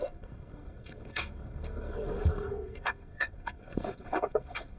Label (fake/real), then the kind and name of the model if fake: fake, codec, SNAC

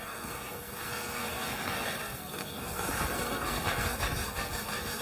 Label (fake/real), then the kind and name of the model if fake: fake, codec, SNAC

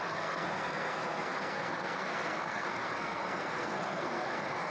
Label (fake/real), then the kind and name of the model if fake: fake, codec, SNAC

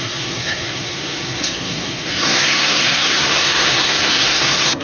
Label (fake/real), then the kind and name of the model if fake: fake, codec, SNAC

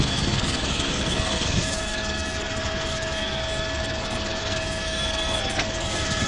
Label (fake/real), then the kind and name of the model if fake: fake, codec, SNAC